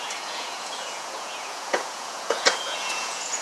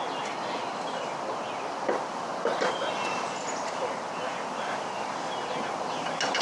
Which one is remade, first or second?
first